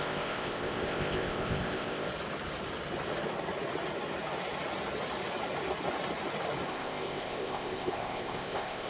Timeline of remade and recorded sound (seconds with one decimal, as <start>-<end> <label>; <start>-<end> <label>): 0.0-2.1 remade; 2.1-6.7 recorded; 6.7-8.9 remade